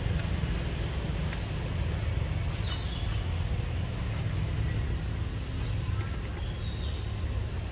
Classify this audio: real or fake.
real